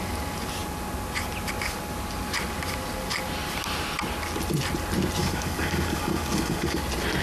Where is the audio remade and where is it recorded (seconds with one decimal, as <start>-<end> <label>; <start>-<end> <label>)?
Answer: 0.0-5.2 recorded; 5.2-6.8 remade; 6.8-7.2 recorded